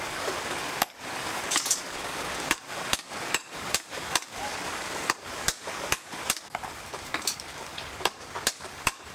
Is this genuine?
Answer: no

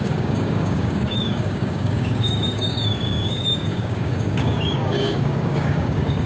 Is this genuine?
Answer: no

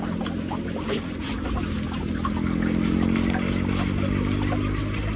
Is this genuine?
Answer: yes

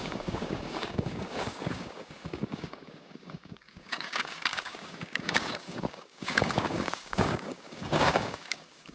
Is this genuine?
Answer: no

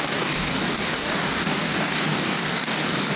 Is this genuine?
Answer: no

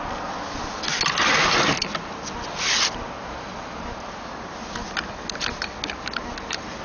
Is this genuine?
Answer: yes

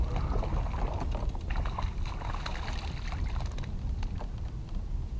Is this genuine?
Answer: yes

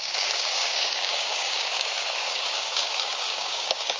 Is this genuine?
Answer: no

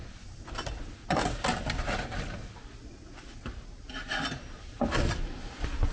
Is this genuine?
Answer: yes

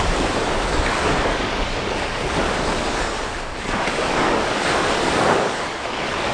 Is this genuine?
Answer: no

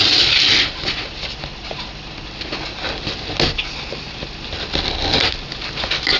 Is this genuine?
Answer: yes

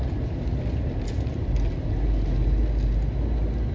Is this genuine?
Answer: yes